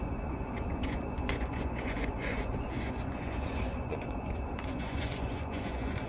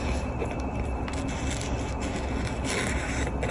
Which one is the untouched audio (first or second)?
second